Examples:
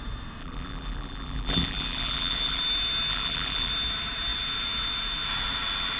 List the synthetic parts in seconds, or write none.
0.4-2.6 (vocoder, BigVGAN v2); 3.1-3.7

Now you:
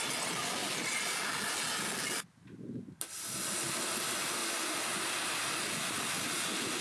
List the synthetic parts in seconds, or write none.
none

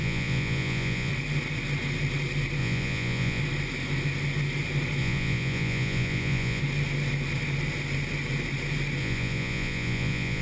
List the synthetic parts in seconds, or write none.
0.0-1.1 (vocoder, Vocos); 2.6-3.4; 5.0-6.6; 9.0-10.4

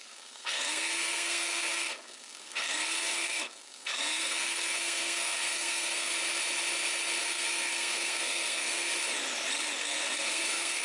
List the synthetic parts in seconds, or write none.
0.0-6.1 (codec, SNAC); 7.2-8.9; 9.8-10.8

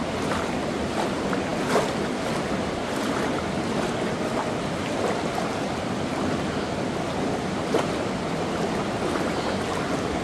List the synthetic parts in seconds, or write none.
none

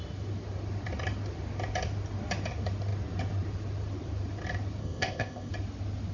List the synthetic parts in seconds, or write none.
4.8-5.5 (codec, ZipCodec)

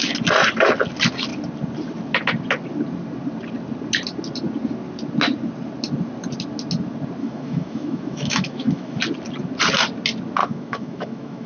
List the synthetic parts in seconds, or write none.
7.2-9.0 (autoencoder, DAC-VAE); 10.4-11.5

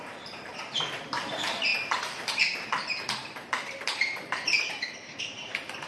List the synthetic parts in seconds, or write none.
0.0-5.9 (vocoder, BigVGAN v2)